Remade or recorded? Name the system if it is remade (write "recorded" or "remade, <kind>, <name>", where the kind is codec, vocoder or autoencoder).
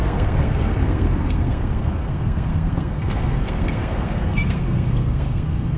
remade, codec, SNAC